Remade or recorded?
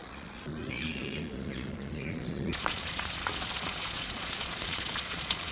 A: remade